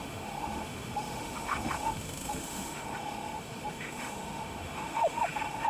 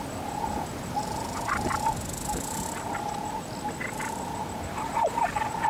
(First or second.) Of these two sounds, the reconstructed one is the first